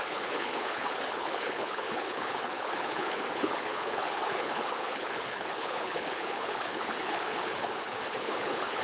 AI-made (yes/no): yes